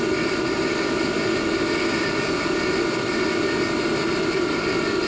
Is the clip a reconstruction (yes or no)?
yes